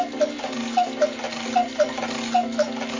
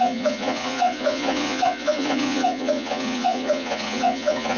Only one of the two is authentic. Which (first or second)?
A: first